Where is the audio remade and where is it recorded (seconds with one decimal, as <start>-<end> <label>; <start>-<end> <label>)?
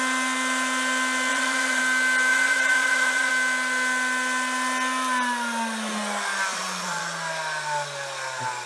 0.0-1.3 recorded; 1.3-1.8 remade; 1.8-2.3 recorded; 2.3-3.3 remade; 3.3-6.5 recorded; 6.5-7.0 remade; 7.0-8.7 recorded